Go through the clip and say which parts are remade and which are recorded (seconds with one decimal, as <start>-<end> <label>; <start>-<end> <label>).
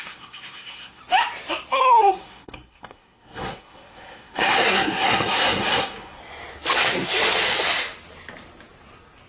0.0-1.0 remade; 1.0-1.7 recorded; 1.7-6.2 remade; 6.2-9.3 recorded